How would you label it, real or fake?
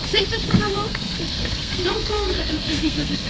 fake